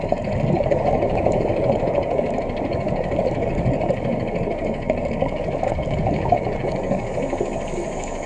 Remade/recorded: remade